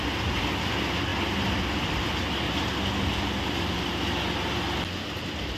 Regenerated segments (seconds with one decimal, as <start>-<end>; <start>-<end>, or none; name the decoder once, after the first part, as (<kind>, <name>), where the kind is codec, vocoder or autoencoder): none